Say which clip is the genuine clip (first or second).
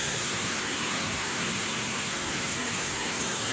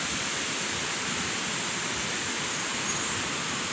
second